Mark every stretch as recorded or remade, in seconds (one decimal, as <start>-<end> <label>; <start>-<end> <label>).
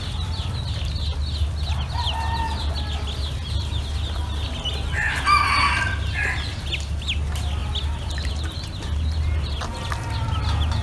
0.0-10.8 recorded